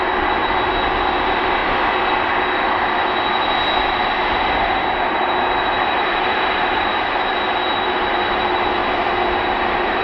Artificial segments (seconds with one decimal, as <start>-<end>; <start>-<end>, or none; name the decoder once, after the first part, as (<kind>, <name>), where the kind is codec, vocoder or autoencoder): none

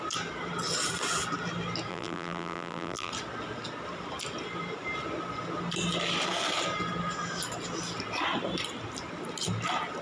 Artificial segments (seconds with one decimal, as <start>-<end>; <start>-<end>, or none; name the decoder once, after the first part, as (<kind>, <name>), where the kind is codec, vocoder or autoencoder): 1.9-3.1 (vocoder, BigVGAN v2)

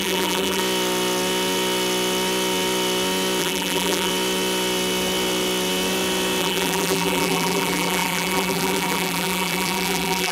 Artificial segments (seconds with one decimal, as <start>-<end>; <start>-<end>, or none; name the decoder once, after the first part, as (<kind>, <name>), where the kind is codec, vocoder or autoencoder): 0.0-0.6 (vocoder, BigVGAN v2); 3.4-4.1; 6.4-10.3

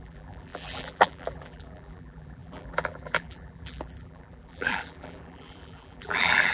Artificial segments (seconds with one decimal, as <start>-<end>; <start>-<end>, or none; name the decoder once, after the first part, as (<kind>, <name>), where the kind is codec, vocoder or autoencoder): 0.0-6.5 (vocoder, BigVGAN v2)

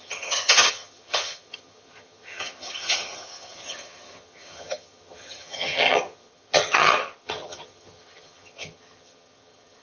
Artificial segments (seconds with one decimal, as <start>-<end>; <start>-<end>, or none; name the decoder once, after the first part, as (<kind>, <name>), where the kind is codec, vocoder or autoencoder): 0.0-9.8 (vocoder, HiFi-GAN)

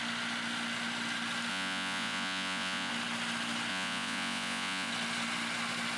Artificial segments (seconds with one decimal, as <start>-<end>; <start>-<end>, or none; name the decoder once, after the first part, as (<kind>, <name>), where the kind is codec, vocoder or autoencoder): 1.5-2.9 (vocoder, Vocos); 3.7-4.9

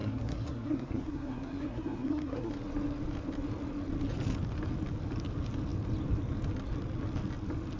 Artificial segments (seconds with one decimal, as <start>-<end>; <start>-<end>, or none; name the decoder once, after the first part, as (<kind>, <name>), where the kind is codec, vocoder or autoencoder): 0.0-2.5 (codec, SNAC)

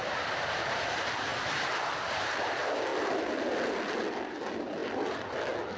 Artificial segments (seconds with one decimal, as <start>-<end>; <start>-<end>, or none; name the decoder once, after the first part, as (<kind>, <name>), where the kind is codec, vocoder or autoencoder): 0.0-5.8 (vocoder, BigVGAN v2)